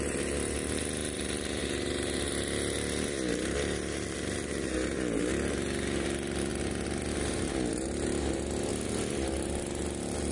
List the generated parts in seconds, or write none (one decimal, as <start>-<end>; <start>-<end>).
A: 6.5-7.4; 8.7-9.6